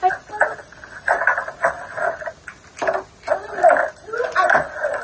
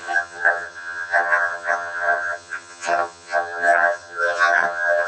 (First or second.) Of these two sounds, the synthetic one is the second